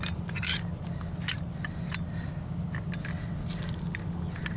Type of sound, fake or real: real